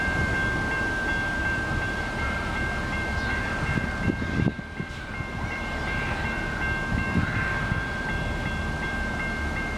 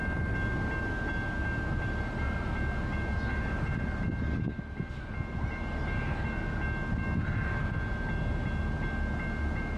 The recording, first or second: second